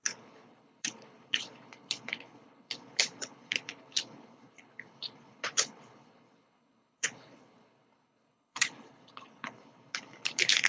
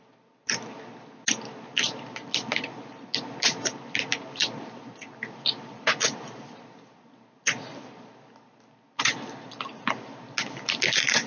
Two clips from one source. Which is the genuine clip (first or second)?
second